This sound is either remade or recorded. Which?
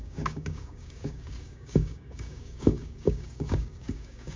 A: remade